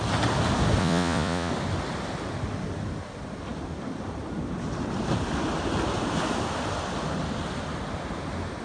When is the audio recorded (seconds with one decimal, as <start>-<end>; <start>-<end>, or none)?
0.0-0.8; 1.5-8.6